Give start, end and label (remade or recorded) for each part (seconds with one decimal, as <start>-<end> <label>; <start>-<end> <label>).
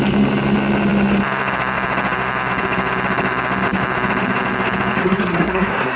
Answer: 0.0-5.0 recorded; 5.0-6.0 remade